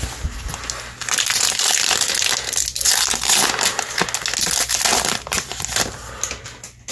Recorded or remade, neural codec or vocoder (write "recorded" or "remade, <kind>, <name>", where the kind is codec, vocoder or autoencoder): recorded